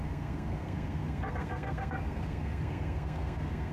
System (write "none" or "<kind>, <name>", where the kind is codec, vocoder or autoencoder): codec, SNAC